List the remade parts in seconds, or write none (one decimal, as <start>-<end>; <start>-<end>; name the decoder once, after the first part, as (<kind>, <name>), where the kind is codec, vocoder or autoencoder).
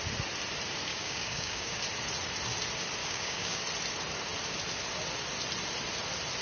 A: 0.9-1.8 (codec, DAC); 3.0-3.6